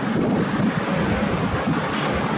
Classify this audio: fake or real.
real